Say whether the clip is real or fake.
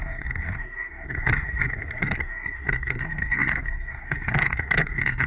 fake